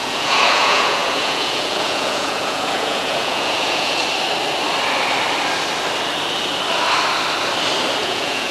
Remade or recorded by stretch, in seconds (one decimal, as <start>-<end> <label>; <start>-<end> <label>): 0.0-4.0 remade; 4.0-8.0 recorded; 8.0-8.5 remade